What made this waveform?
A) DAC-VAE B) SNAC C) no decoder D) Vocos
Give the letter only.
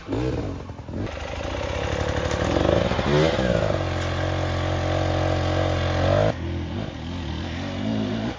C